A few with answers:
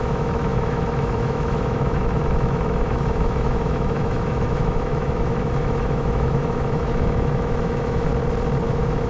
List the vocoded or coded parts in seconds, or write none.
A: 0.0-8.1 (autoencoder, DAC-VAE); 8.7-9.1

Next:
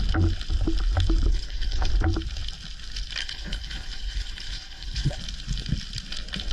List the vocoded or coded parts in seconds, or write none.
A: 1.3-1.9 (codec, HILCodec); 3.2-5.2

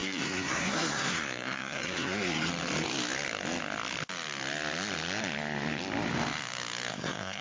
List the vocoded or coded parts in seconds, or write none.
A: 0.0-2.5 (codec, SNAC); 6.9-7.4

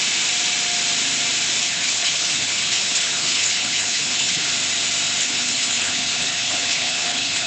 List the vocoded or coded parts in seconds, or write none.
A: 1.6-4.5 (codec, HILCodec); 5.2-7.5

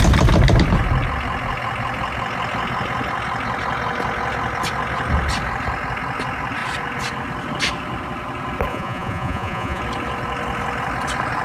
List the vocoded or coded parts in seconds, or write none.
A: 8.7-9.8 (vocoder, Vocos)